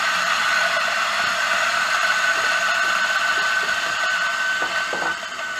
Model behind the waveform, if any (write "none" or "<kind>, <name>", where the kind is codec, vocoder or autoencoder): none